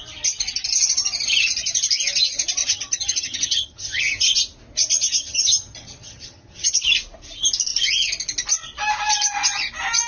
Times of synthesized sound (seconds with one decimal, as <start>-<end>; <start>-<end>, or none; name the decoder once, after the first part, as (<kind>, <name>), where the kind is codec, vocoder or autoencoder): 2.6-4.0 (vocoder, HiFi-GAN); 5.2-6.8